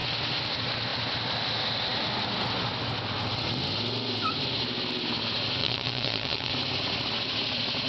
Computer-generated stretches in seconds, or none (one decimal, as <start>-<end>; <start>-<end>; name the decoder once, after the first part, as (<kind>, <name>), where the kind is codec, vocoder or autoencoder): 5.6-6.5 (vocoder, WaveNeXt)